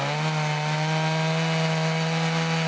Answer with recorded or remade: recorded